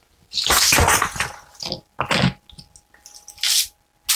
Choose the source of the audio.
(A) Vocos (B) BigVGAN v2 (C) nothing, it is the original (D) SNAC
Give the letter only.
C